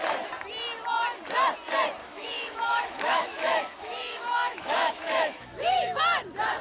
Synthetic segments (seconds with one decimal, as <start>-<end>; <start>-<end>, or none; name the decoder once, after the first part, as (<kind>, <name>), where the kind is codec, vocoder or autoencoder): 2.0-6.0 (autoencoder, DAC-VAE)